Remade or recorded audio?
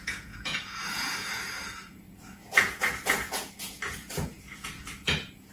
remade